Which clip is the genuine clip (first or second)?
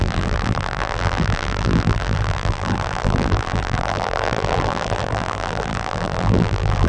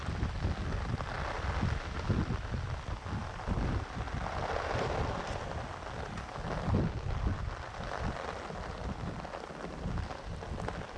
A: second